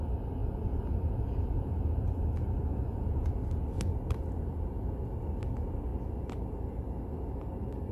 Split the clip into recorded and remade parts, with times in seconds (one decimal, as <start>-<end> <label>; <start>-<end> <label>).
0.0-0.4 recorded; 0.4-2.1 remade; 2.1-2.7 recorded; 2.7-3.3 remade; 3.3-7.9 recorded